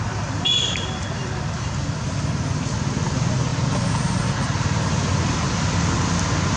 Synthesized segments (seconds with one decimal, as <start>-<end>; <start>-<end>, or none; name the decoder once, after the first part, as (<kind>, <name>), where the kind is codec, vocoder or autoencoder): none